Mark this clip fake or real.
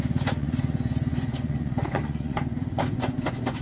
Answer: fake